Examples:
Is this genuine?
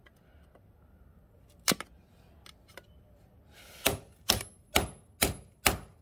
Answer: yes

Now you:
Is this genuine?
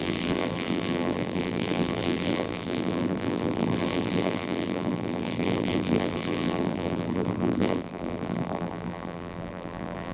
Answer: no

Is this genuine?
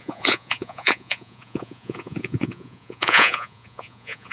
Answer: no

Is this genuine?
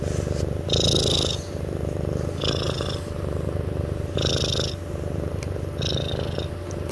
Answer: yes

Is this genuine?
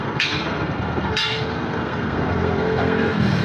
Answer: no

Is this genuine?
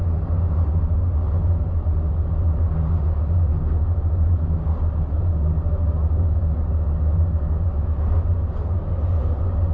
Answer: yes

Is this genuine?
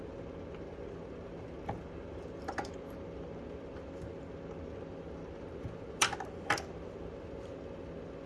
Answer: yes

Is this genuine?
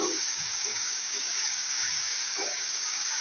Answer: no